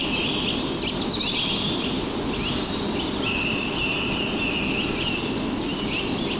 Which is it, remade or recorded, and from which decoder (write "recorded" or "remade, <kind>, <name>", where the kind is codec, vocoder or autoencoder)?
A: recorded